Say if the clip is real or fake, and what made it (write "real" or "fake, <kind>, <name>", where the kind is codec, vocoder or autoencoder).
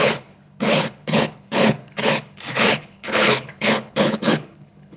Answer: fake, codec, HILCodec